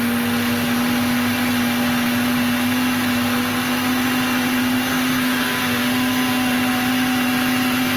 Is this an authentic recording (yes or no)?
yes